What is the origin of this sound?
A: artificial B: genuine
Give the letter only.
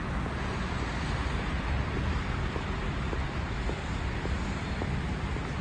B